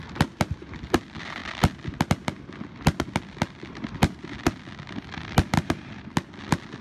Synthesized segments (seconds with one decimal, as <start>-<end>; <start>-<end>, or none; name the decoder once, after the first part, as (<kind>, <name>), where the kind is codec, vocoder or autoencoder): none